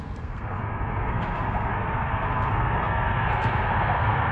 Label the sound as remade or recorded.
remade